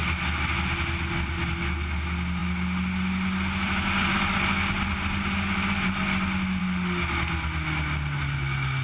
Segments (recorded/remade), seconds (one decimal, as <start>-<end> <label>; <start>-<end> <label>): 0.0-8.8 recorded